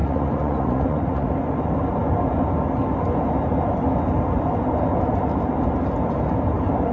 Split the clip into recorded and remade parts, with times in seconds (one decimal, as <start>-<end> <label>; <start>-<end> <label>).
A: 0.0-1.3 remade; 1.3-6.9 recorded